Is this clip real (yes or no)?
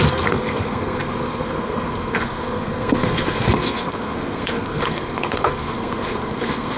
no